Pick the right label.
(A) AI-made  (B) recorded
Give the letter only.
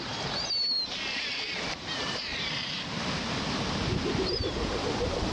A